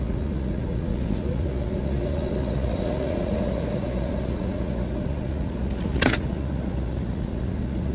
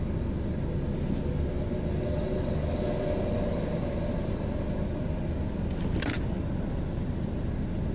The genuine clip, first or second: second